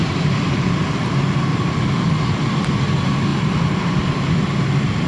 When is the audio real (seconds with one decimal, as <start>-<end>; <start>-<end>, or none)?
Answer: 0.6-1.5; 2.7-5.1